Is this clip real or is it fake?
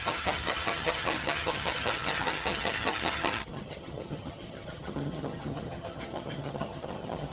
fake